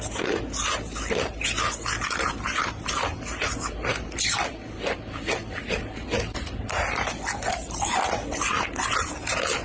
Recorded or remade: recorded